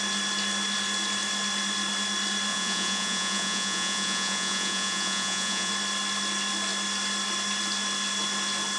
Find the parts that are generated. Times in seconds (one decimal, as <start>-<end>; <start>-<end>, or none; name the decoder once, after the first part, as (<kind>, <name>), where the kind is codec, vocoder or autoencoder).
2.5-5.7 (vocoder, Vocos)

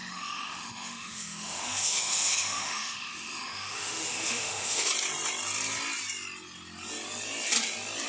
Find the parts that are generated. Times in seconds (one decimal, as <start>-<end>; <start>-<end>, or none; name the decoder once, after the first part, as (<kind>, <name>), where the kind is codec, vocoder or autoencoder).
0.0-4.9 (autoencoder, DAC-VAE)